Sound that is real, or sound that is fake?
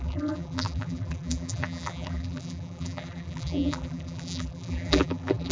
fake